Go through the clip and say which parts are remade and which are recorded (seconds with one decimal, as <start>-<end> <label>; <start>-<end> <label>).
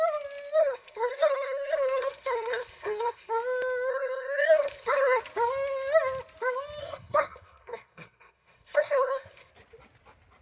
0.0-0.6 recorded; 0.6-3.3 remade; 3.3-3.9 recorded; 3.9-5.2 remade; 5.2-6.8 recorded; 6.8-9.5 remade; 9.5-10.4 recorded